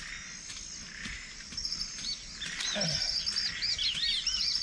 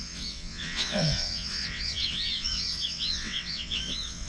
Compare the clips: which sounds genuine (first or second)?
first